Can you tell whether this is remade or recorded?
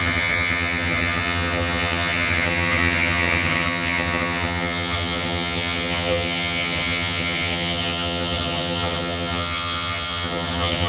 remade